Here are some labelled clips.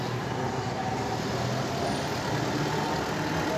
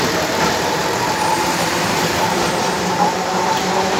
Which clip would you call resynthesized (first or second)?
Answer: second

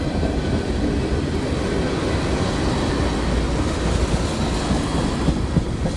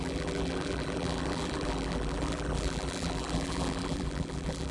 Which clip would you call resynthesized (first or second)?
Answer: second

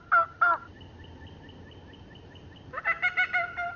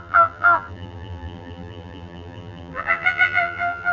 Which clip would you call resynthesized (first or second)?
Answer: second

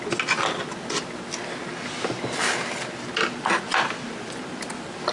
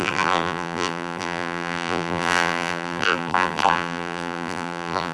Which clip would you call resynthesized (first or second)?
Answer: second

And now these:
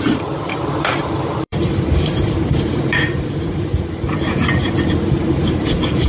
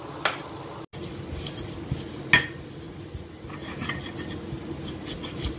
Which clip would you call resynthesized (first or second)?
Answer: first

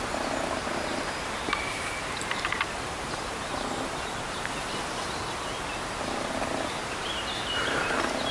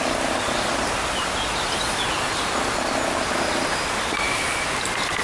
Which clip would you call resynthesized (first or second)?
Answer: first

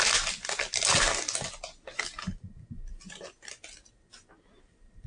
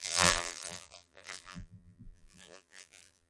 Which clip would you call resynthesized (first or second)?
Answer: second